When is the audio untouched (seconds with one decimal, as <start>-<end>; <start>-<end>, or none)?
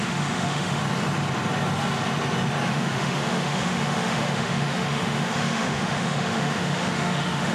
0.8-2.7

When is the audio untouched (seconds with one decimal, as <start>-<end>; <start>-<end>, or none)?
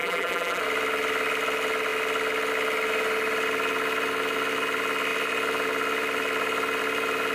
0.6-7.3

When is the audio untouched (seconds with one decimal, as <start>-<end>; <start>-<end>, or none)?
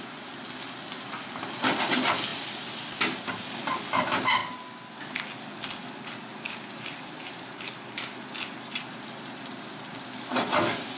0.0-11.0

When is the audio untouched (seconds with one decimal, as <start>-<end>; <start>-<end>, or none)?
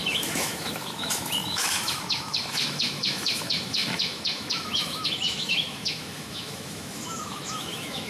none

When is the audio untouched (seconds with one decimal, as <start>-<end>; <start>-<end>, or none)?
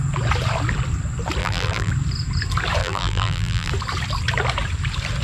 0.0-1.4; 1.9-2.8; 3.7-5.2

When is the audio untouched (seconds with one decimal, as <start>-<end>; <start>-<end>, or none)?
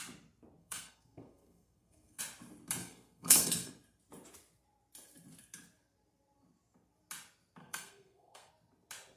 0.0-0.6; 2.2-2.8; 3.7-7.6; 8.5-9.2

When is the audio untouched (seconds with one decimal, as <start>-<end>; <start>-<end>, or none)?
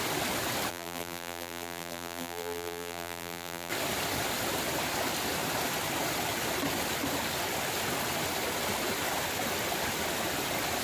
0.0-0.7; 3.7-10.8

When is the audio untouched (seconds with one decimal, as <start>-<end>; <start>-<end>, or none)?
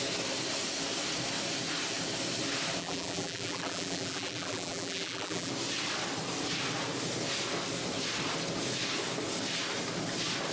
0.0-2.8; 5.5-10.5